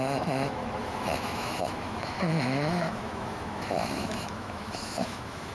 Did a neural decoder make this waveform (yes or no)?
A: yes